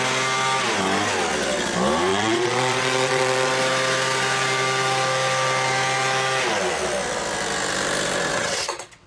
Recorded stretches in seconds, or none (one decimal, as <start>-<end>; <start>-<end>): 0.0-2.1; 3.5-8.3